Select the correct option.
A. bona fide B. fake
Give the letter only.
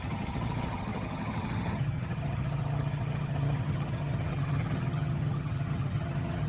B